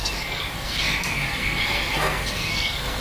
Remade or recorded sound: remade